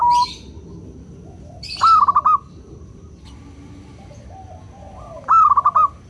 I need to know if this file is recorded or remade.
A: recorded